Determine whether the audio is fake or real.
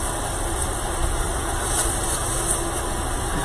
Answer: real